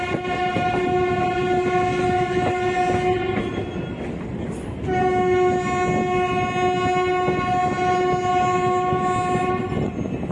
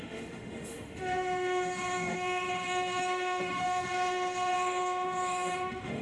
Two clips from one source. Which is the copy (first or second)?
second